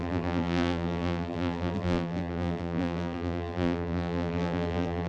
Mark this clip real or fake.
fake